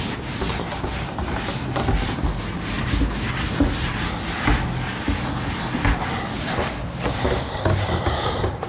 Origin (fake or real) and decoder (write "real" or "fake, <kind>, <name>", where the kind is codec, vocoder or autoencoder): real